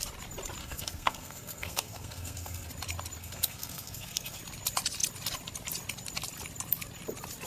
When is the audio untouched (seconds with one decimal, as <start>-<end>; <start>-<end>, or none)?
0.0-0.6; 2.7-3.2; 4.4-7.5